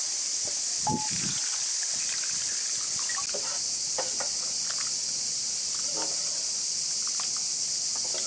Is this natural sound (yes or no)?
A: yes